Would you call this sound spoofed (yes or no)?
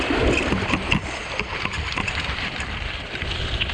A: no